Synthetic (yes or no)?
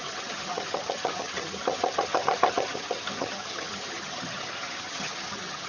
yes